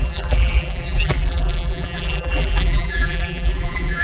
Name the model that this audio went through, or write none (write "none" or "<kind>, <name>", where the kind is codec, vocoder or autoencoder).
vocoder, BigVGAN v2